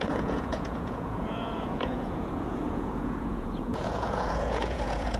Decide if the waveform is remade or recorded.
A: remade